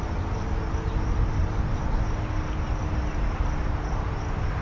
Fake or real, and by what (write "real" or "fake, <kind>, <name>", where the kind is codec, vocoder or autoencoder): real